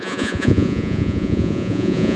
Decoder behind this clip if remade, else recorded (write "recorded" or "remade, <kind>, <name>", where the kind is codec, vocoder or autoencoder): remade, vocoder, Vocos